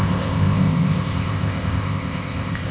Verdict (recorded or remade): remade